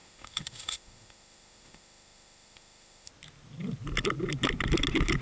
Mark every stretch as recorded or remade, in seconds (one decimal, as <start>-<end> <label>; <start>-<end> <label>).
0.0-3.1 remade; 3.1-5.2 recorded